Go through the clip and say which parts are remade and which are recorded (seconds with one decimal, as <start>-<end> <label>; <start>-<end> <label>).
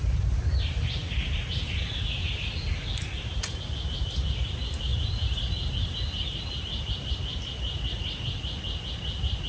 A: 0.0-9.5 recorded